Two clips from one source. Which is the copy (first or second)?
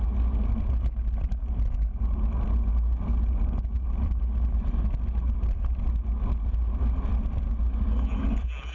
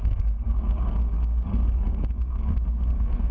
second